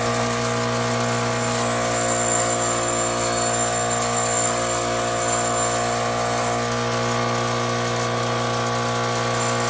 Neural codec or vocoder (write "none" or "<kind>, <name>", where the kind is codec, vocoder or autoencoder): none